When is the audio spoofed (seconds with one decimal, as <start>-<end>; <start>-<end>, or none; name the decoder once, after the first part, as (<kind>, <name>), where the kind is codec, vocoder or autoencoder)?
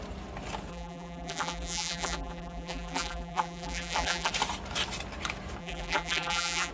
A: 0.7-4.3 (vocoder, BigVGAN v2); 5.6-6.7